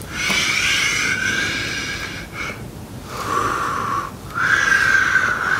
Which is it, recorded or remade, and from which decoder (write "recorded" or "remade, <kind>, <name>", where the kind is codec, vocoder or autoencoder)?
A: recorded